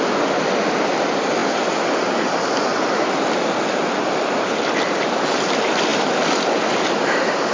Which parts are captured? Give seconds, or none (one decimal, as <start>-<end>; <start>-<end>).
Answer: 0.0-7.5